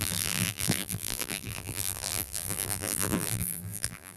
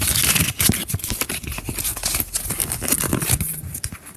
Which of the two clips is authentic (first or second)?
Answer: second